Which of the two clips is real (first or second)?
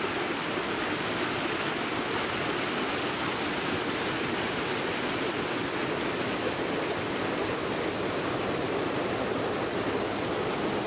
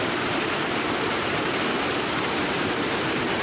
first